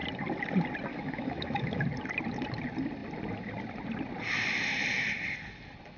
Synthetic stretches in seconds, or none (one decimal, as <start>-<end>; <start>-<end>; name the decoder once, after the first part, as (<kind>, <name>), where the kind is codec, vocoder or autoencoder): 0.9-1.8 (autoencoder, DAC-VAE)